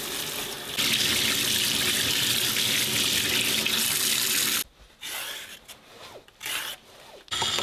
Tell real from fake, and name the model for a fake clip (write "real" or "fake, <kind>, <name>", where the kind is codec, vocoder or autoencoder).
real